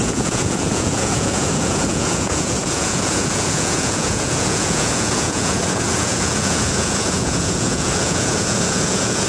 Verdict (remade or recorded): remade